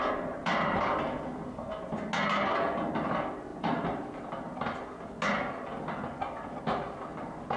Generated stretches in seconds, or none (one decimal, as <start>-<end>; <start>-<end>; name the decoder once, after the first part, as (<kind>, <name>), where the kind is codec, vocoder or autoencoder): 0.4-1.0 (vocoder, BigVGAN v2); 3.5-4.3